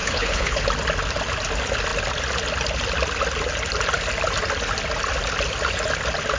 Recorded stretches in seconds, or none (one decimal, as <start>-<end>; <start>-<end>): 0.6-6.4